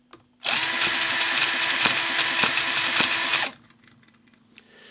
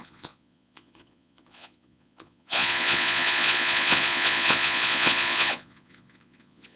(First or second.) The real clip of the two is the first